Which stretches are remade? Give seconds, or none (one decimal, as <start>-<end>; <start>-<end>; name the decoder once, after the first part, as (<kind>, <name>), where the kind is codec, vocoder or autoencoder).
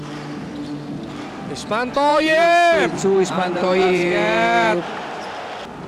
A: 2.1-5.3 (vocoder, BigVGAN v2)